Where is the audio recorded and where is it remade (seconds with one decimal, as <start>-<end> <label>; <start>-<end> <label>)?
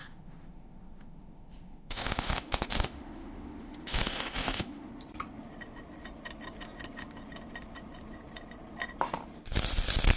0.0-4.9 remade; 4.9-10.2 recorded